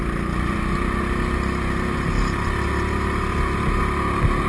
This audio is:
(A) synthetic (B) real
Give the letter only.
B